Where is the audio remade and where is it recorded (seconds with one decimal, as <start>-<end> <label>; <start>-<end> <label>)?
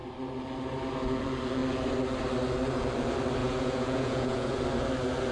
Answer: 0.0-3.4 recorded; 3.4-4.6 remade; 4.6-5.3 recorded